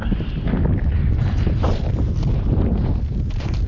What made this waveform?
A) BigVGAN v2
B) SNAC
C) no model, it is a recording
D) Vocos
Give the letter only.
C